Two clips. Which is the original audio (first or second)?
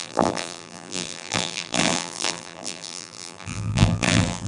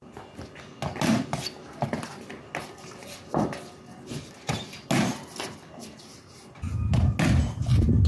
second